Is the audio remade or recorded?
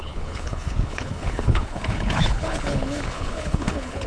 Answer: remade